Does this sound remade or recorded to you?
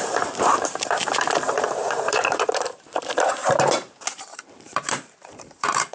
remade